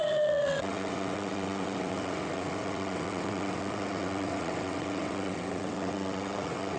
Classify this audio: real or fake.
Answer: fake